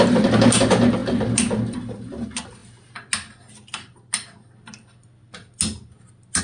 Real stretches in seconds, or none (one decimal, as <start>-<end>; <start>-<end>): 0.0-6.4